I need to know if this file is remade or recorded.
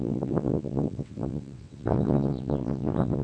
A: remade